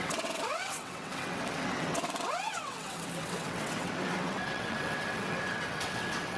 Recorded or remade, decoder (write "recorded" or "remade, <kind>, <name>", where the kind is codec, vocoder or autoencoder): remade, vocoder, WaveNeXt